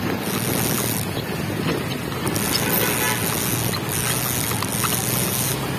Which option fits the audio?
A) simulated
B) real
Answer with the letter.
B